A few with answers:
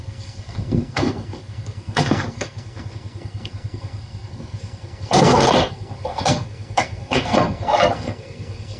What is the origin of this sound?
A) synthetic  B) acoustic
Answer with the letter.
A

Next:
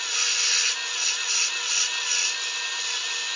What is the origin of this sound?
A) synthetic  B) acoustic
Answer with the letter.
B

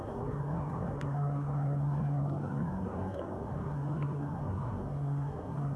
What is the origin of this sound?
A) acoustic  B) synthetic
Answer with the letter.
B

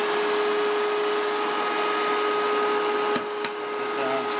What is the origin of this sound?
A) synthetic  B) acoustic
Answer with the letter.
B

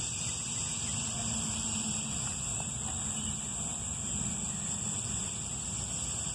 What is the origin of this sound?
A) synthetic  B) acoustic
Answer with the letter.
B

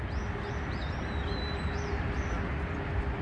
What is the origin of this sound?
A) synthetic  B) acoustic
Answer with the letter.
B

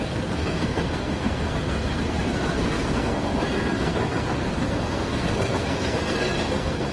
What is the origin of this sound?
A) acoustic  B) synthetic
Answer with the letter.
B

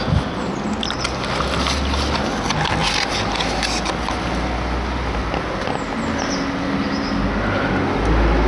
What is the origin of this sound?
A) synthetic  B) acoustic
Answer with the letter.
B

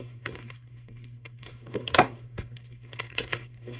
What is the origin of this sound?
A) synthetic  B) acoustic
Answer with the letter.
A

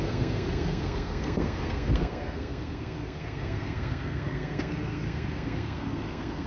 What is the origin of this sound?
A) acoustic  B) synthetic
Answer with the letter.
B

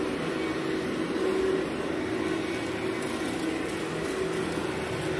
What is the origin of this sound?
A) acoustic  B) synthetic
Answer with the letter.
A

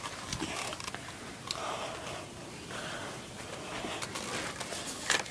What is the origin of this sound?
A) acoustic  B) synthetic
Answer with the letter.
A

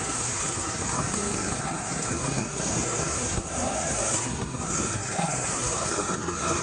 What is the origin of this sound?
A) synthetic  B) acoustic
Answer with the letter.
A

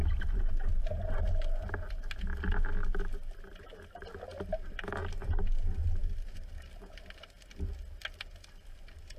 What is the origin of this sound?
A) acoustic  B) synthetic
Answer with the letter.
A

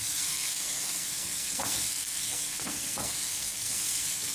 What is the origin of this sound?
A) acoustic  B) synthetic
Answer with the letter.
B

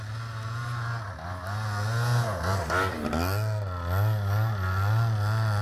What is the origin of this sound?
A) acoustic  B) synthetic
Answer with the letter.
A